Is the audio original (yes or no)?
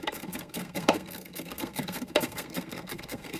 no